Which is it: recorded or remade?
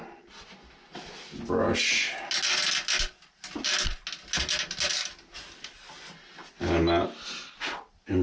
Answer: recorded